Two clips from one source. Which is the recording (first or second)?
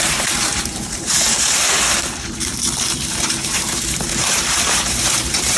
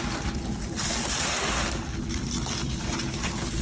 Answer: second